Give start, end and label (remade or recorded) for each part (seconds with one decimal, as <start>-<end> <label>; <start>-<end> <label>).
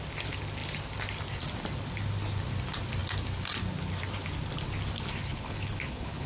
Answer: 0.0-5.2 recorded; 5.2-6.3 remade